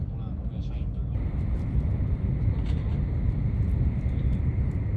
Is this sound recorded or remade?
recorded